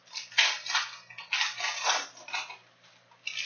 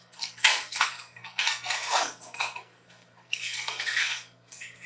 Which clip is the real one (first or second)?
first